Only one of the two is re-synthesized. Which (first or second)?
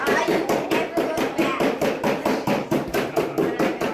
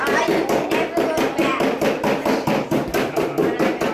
first